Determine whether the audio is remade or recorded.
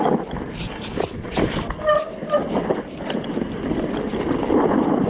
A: recorded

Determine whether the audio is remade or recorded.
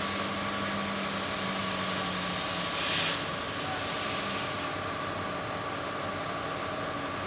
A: recorded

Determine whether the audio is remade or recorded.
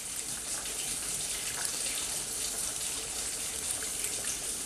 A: recorded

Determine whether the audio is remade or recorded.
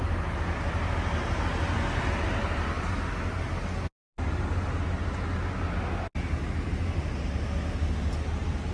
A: recorded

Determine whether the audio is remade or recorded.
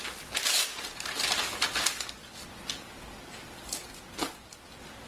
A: recorded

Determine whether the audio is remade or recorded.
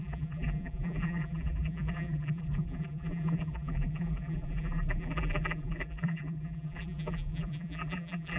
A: remade